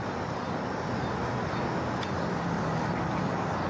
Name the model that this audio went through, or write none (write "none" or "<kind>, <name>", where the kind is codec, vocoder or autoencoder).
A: none